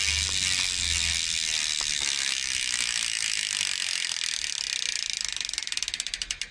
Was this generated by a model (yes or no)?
no